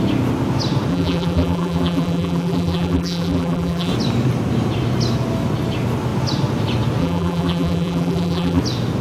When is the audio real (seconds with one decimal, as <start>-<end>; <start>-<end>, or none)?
0.0-0.9; 3.9-7.0; 8.6-9.0